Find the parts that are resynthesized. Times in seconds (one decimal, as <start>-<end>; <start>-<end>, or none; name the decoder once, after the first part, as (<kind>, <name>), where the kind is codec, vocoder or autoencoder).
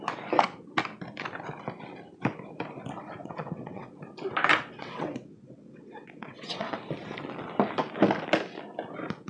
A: 3.2-3.9 (vocoder, WaveNeXt); 4.5-6.8